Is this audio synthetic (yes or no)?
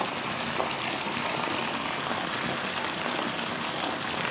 yes